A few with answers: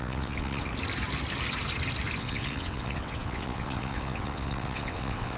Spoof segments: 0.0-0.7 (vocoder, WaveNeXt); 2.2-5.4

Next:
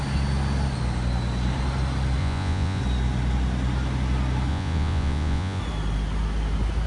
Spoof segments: 2.2-2.8 (vocoder, Vocos); 4.5-5.6

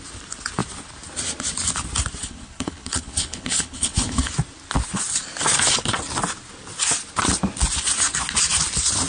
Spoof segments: 2.2-4.3 (codec, HILCodec)

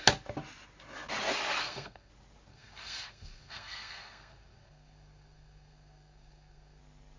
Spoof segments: 1.6-2.1 (codec, SNAC); 2.5-6.8

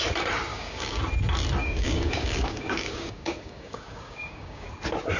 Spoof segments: 0.5-1.0 (codec, DAC); 1.6-4.7